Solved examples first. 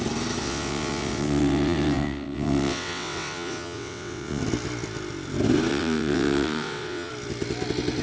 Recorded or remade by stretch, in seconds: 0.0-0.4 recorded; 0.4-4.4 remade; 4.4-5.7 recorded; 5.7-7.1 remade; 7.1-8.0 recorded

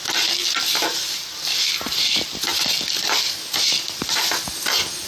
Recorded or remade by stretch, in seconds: 0.0-5.1 recorded

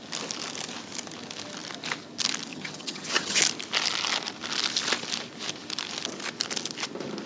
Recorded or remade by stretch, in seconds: 0.0-2.5 recorded; 2.5-3.4 remade; 3.4-7.3 recorded